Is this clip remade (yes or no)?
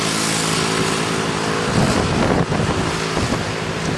no